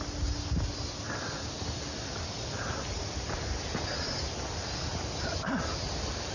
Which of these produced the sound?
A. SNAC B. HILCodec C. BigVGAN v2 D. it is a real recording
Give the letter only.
D